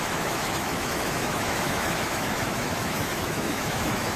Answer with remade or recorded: remade